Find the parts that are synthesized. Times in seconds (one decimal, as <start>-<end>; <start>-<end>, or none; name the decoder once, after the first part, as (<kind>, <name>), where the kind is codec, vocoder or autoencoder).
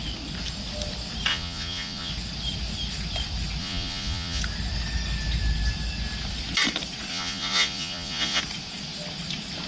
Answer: 1.3-2.1 (vocoder, Vocos); 3.6-4.4; 7.1-8.4